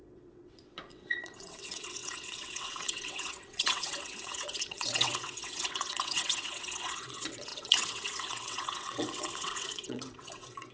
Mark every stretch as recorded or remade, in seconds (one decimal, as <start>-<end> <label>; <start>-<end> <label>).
0.0-10.7 remade